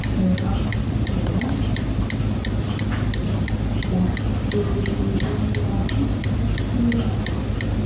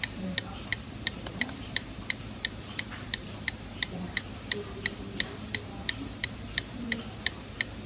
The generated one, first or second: second